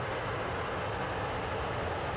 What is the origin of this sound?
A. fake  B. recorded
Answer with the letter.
B